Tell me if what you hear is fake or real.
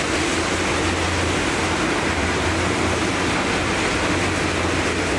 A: real